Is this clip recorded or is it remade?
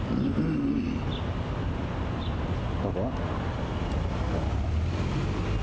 recorded